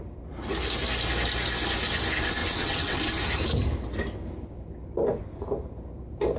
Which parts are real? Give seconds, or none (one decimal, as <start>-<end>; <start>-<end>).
0.0-2.4; 3.0-6.4